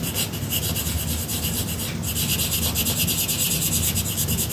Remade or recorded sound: recorded